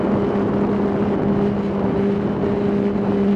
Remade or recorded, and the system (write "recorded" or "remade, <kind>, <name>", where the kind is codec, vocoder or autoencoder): recorded